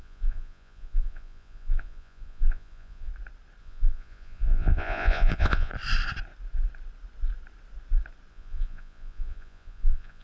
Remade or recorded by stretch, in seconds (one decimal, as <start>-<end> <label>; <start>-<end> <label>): 0.0-3.1 remade; 3.1-3.6 recorded; 3.6-5.7 remade; 5.7-8.3 recorded; 8.3-10.2 remade